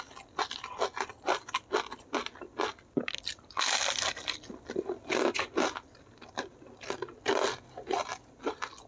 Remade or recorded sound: recorded